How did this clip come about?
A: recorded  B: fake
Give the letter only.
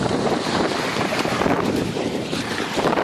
B